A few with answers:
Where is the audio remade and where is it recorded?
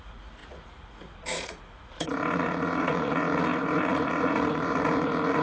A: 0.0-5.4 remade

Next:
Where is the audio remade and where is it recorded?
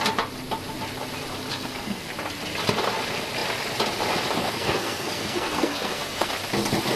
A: 0.0-1.5 recorded; 1.5-2.1 remade; 2.1-4.4 recorded; 4.4-6.3 remade; 6.3-7.0 recorded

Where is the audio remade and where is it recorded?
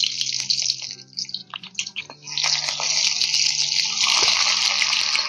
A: 0.0-1.4 recorded; 1.4-2.0 remade; 2.0-5.3 recorded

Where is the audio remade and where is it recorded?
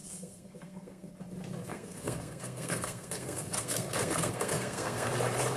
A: 0.0-1.1 remade; 1.1-1.7 recorded; 1.7-5.1 remade; 5.1-5.6 recorded